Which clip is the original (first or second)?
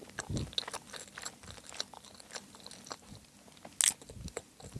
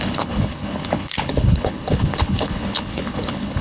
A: first